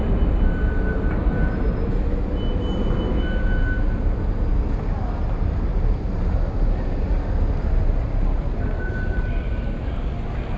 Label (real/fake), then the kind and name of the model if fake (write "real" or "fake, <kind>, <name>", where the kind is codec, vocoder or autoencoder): real